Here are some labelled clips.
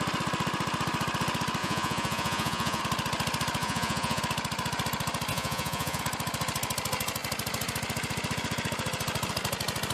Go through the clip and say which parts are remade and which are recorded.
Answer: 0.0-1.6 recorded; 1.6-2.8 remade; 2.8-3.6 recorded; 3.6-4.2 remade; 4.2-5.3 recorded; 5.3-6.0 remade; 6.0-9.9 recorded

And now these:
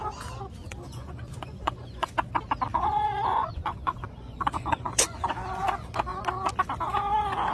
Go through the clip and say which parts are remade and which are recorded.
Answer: 0.0-0.6 recorded; 0.6-2.1 remade; 2.1-2.7 recorded; 2.7-5.3 remade; 5.3-7.5 recorded

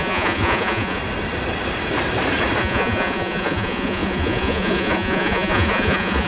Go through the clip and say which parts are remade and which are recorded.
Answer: 0.0-1.0 remade; 1.0-2.6 recorded; 2.6-6.3 remade

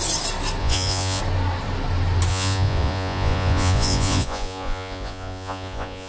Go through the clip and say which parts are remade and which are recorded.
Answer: 0.0-0.6 recorded; 0.6-1.2 remade; 1.2-2.3 recorded; 2.3-6.1 remade

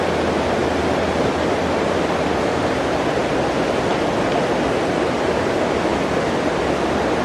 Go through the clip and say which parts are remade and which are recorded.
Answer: 0.0-7.2 recorded

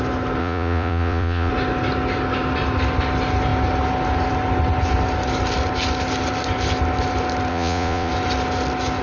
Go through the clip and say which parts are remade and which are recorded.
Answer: 0.0-0.4 recorded; 0.4-1.5 remade; 1.5-7.5 recorded; 7.5-8.1 remade; 8.1-9.0 recorded

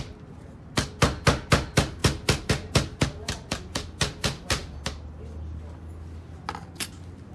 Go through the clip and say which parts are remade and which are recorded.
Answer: 0.0-7.3 recorded